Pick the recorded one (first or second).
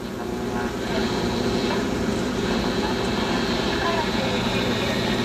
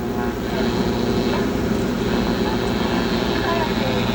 second